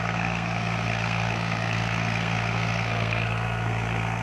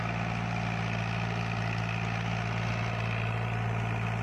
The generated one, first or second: first